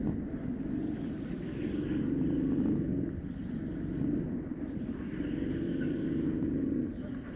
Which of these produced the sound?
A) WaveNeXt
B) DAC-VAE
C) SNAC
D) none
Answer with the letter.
D